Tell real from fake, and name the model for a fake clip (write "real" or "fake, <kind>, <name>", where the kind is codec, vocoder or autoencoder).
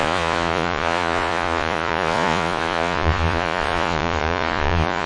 fake, vocoder, Vocos